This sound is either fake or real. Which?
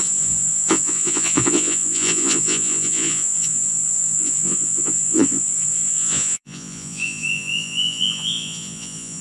fake